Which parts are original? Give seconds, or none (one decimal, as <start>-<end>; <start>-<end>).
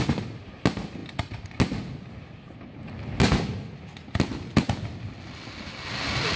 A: 0.0-6.4